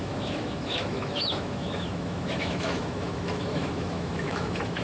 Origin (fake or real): fake